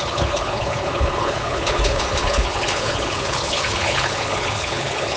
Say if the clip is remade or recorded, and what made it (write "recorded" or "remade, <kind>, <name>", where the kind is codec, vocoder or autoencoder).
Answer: remade, codec, HILCodec